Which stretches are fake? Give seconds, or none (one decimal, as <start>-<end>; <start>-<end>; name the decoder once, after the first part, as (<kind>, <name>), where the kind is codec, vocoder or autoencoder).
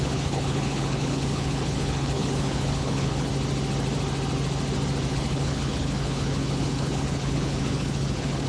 0.0-3.3 (codec, HILCodec); 5.1-8.5